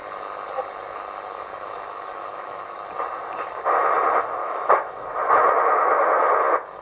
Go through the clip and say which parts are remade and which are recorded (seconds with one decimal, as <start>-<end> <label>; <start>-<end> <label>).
0.0-1.5 recorded; 1.5-2.8 remade; 2.8-4.4 recorded; 4.4-5.3 remade; 5.3-6.8 recorded